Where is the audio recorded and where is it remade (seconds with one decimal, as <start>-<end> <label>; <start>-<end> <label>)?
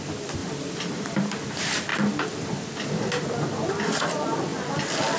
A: 0.0-0.4 recorded; 0.4-1.2 remade; 1.2-5.2 recorded